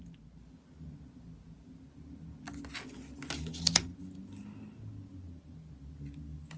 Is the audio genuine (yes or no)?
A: yes